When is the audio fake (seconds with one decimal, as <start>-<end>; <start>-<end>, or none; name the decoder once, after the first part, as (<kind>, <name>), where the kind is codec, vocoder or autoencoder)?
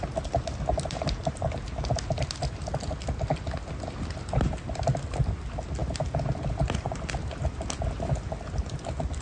none